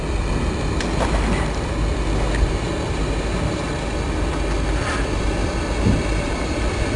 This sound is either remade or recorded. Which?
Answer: recorded